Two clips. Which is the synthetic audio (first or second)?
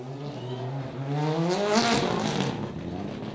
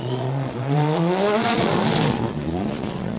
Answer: second